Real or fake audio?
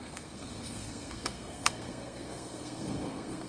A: fake